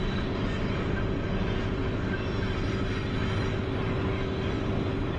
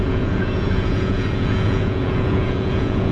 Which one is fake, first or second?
second